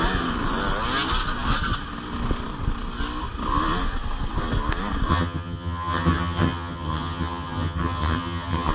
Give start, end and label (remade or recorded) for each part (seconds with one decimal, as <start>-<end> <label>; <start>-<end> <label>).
0.0-5.1 recorded; 5.1-8.7 remade